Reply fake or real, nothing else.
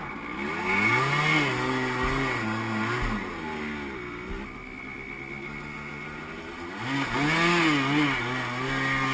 real